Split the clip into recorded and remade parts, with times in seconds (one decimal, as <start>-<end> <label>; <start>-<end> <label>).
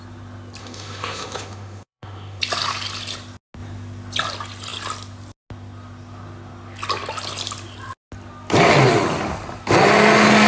0.0-0.6 recorded; 0.6-2.4 remade; 2.4-10.5 recorded